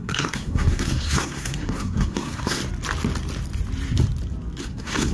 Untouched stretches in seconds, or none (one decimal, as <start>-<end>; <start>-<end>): 2.6-4.6